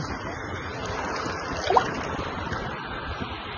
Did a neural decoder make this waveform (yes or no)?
no